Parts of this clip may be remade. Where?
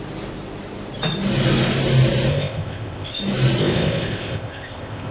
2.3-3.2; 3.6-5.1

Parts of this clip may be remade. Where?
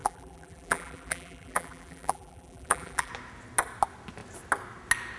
0.0-3.1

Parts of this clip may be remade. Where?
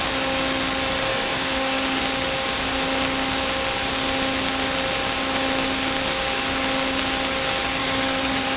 1.1-2.0; 7.8-8.6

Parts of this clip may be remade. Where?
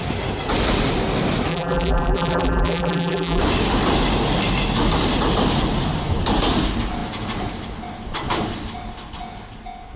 1.5-3.4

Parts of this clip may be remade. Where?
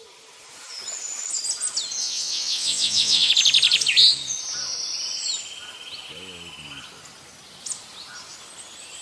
2.0-3.3